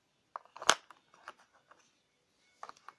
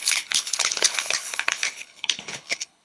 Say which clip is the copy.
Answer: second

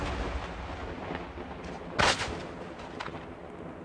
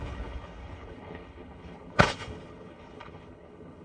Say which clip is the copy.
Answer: second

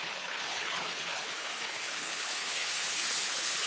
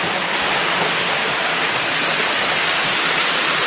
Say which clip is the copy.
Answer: first